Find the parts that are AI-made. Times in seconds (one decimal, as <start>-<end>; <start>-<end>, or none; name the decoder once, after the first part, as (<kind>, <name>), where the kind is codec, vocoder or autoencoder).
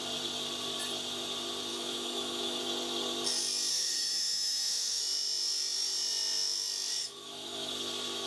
1.7-2.6 (autoencoder, DAC-VAE); 3.7-5.0; 7.0-7.7